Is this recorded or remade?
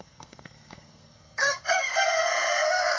remade